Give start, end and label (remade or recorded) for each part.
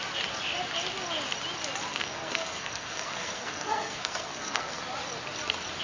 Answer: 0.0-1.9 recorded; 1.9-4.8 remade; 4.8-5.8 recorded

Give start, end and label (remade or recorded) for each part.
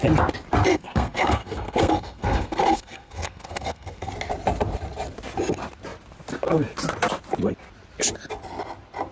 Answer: 0.0-0.7 recorded; 0.7-4.1 remade; 4.1-9.1 recorded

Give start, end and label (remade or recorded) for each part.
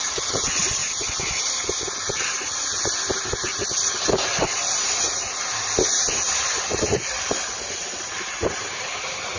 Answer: 0.0-9.4 recorded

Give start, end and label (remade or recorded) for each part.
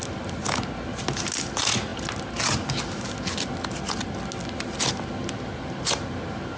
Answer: 0.0-6.6 recorded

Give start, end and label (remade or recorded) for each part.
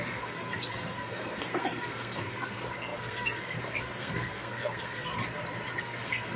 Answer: 0.0-5.1 remade; 5.1-5.8 recorded; 5.8-6.4 remade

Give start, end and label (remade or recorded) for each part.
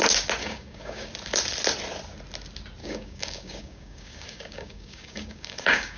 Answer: 0.0-0.4 recorded; 0.4-1.1 remade; 1.1-2.8 recorded; 2.8-6.0 remade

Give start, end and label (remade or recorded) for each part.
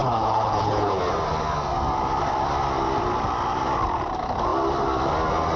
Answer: 0.0-1.0 remade; 1.0-5.6 recorded